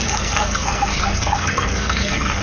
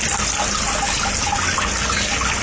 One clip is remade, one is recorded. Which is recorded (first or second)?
second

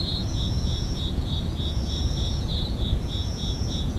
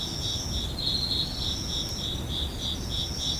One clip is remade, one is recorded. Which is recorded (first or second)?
second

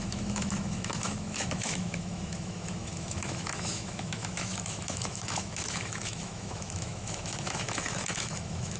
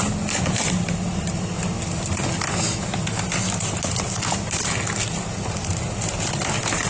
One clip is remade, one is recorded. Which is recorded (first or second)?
second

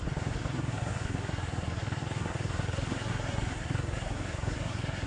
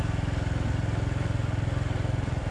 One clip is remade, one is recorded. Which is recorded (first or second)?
second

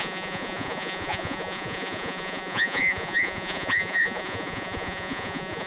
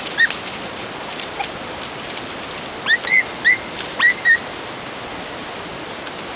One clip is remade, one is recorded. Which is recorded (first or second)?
second